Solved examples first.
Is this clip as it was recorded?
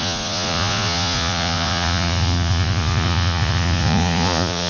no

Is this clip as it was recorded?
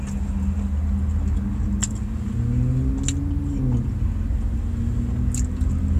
yes